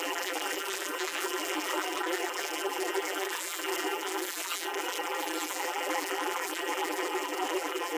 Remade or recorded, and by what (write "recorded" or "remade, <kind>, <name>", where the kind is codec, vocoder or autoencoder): remade, vocoder, BigVGAN v2